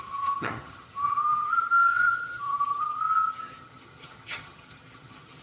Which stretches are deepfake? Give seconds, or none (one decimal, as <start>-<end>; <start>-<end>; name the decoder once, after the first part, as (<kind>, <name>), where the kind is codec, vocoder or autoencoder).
0.0-5.4 (vocoder, HiFi-GAN)